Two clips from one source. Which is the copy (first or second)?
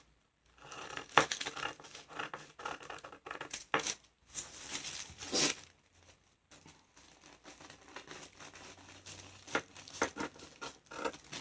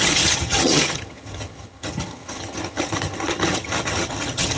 second